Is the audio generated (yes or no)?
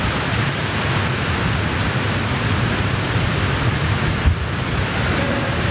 no